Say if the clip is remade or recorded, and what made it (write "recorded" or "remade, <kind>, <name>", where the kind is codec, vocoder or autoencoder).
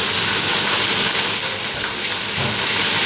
recorded